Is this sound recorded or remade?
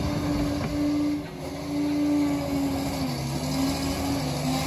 recorded